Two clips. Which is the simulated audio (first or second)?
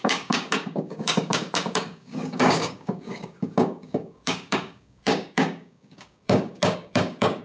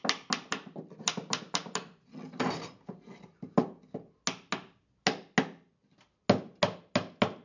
first